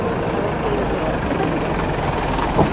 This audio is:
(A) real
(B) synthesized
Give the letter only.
A